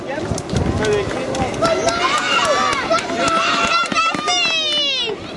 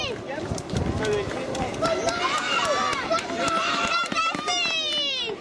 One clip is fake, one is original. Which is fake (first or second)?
second